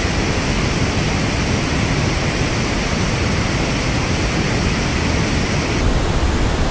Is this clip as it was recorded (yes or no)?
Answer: yes